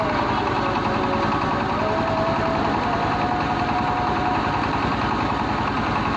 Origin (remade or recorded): recorded